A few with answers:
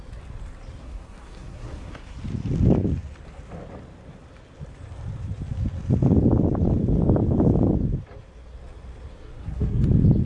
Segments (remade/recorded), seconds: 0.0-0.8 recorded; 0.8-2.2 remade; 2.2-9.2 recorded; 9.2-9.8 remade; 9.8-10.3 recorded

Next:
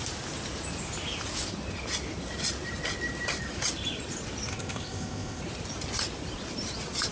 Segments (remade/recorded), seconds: 0.0-4.5 recorded; 4.5-5.4 remade; 5.4-7.1 recorded

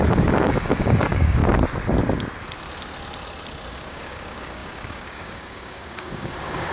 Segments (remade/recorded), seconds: 0.0-1.4 remade; 1.4-3.7 recorded; 3.7-6.7 remade